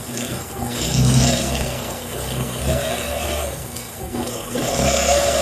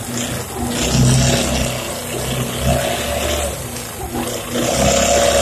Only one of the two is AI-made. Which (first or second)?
first